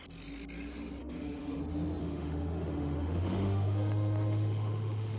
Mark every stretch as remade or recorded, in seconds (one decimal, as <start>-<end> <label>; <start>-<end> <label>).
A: 0.0-1.0 recorded; 1.0-1.6 remade; 1.6-2.0 recorded; 2.0-5.2 remade

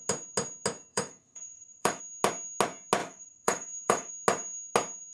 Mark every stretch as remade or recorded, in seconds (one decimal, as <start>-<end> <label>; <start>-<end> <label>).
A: 0.0-0.9 recorded; 0.9-2.0 remade; 2.0-3.0 recorded; 3.0-4.1 remade; 4.1-5.1 recorded

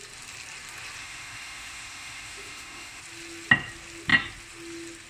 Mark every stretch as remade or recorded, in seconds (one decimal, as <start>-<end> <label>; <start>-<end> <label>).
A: 0.0-1.0 recorded; 1.0-3.0 remade; 3.0-5.1 recorded

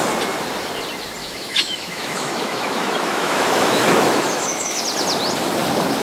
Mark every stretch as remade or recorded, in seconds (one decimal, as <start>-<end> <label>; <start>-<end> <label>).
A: 0.0-1.2 recorded; 1.2-4.8 remade; 4.8-6.0 recorded

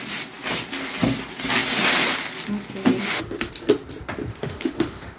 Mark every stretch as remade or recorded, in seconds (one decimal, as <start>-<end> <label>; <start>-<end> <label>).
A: 0.0-3.0 recorded; 3.0-3.5 remade; 3.5-4.3 recorded; 4.3-5.2 remade

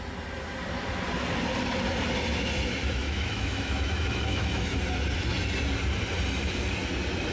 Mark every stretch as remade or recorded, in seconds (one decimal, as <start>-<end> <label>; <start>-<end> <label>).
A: 0.0-2.8 recorded; 2.8-4.8 remade; 4.8-7.3 recorded